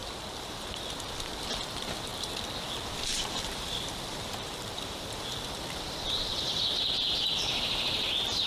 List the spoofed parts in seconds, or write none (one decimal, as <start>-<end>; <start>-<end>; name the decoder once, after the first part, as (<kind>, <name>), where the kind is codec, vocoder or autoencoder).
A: 0.0-1.5 (vocoder, BigVGAN v2); 2.1-6.6